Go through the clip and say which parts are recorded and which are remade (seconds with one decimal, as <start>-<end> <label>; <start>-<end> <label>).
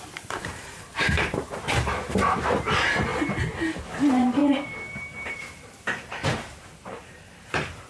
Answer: 0.0-3.1 remade; 3.1-3.6 recorded; 3.6-4.4 remade; 4.4-5.1 recorded; 5.1-7.9 remade